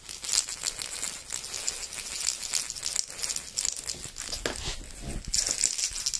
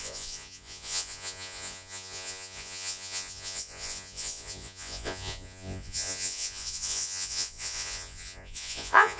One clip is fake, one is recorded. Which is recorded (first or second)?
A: first